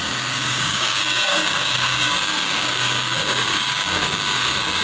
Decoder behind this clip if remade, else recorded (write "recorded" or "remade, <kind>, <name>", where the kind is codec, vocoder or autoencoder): remade, codec, DAC